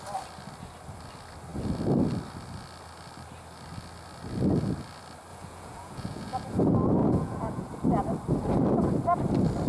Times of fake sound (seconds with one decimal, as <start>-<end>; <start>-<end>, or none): 5.3-6.6; 7.0-7.7